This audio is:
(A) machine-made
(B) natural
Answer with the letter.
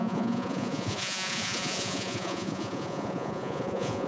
A